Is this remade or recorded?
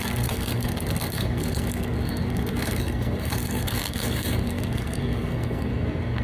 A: remade